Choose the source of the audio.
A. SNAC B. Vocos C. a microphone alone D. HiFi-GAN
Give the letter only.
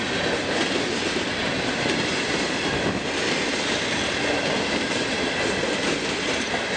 C